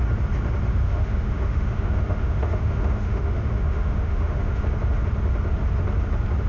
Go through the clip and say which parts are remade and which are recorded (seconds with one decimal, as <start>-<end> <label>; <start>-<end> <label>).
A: 0.0-0.7 recorded; 0.7-4.6 remade; 4.6-6.5 recorded